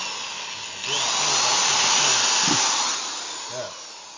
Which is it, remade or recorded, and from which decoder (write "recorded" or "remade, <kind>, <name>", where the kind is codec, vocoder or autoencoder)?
recorded